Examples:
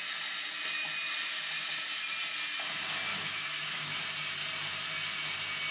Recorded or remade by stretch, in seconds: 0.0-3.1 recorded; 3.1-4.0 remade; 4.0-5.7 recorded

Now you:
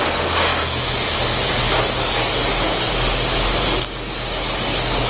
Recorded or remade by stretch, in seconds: 0.0-5.1 recorded

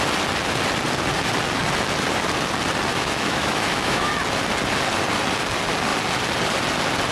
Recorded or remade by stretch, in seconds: 0.0-2.9 recorded; 2.9-4.1 remade; 4.1-7.1 recorded

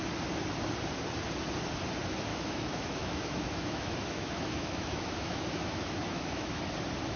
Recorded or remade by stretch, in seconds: 0.0-2.3 recorded; 2.3-6.6 remade; 6.6-7.2 recorded